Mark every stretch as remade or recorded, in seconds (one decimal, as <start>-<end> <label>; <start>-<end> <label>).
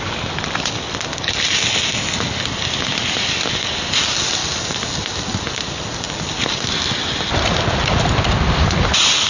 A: 0.0-9.3 recorded